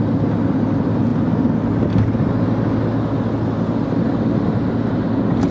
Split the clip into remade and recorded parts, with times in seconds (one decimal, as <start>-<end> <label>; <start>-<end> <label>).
0.0-1.1 recorded; 1.1-2.4 remade; 2.4-5.5 recorded